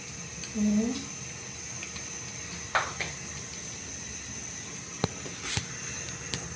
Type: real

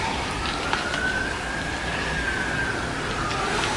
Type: real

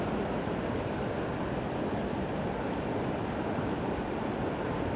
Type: real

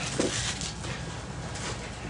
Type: real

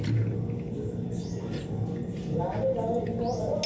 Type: real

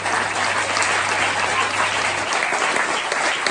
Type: real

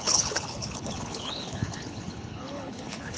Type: fake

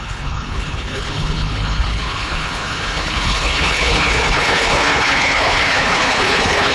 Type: fake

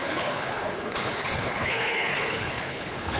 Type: fake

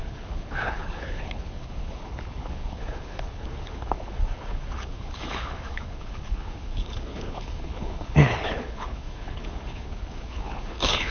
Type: fake